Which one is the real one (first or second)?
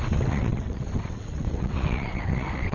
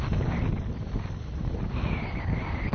second